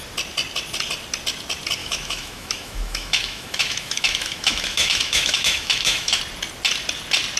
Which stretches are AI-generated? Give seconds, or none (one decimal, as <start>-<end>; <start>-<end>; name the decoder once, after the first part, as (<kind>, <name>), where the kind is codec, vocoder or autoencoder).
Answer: 1.8-6.2 (autoencoder, DAC-VAE)